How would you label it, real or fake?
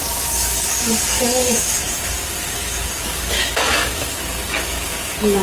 fake